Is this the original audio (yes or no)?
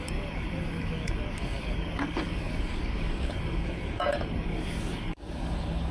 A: no